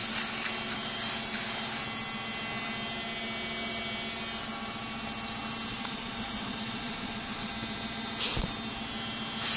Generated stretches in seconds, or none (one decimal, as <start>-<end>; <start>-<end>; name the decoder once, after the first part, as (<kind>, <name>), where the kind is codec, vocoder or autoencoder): 5.7-7.5 (vocoder, Vocos)